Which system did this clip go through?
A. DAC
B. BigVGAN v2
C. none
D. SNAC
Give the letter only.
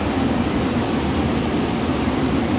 C